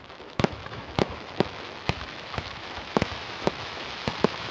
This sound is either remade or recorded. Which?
remade